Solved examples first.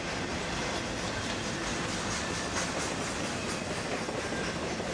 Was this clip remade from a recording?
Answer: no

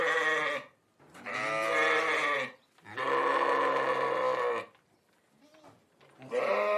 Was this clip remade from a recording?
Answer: no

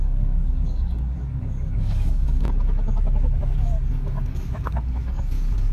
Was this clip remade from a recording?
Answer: yes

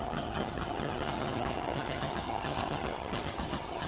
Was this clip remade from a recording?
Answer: yes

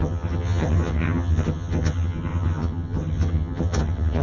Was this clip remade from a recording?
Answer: yes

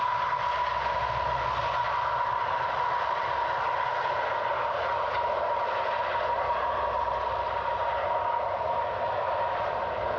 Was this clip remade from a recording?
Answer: no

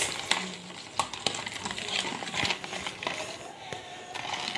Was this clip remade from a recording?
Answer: no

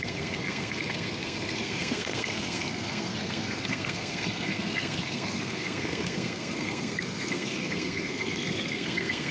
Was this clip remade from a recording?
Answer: yes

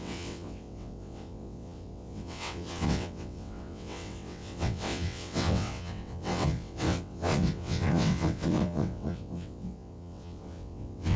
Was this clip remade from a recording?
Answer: yes